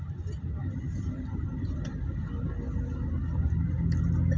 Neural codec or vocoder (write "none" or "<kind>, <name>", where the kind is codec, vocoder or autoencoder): none